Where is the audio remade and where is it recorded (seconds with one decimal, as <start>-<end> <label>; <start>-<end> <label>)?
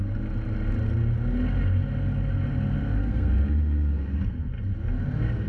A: 0.0-3.0 recorded; 3.0-4.5 remade; 4.5-5.5 recorded